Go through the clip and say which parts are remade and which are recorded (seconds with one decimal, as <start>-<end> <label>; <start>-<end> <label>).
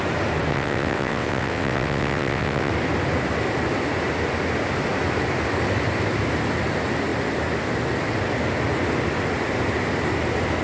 0.0-0.5 recorded; 0.5-2.7 remade; 2.7-10.6 recorded